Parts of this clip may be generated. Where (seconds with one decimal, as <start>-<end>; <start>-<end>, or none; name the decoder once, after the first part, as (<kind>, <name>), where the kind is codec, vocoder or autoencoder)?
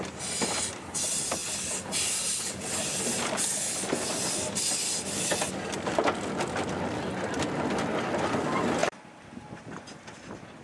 8.8-10.0 (vocoder, BigVGAN v2)